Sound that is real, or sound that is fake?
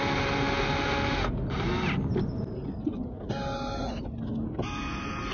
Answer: real